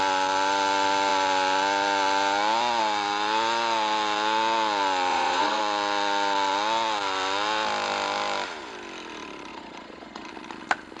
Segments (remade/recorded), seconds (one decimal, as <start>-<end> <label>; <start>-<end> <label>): 0.0-5.1 recorded; 5.1-5.6 remade; 5.6-9.5 recorded; 9.5-10.3 remade; 10.3-11.0 recorded